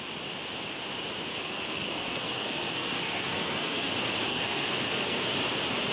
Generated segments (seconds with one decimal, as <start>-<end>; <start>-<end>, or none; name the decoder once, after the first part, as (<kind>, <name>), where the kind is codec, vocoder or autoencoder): 1.3-3.9 (codec, SNAC); 4.3-5.3